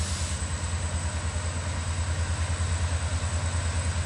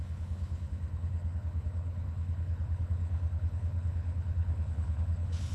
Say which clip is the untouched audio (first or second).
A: first